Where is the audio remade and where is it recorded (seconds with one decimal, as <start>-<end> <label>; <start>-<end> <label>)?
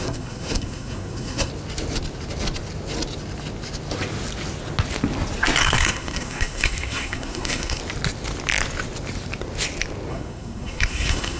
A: 0.0-1.5 remade; 1.5-5.6 recorded; 5.6-7.8 remade; 7.8-10.1 recorded; 10.1-11.4 remade